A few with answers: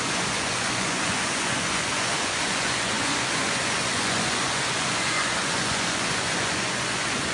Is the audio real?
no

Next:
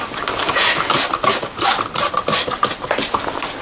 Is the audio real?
no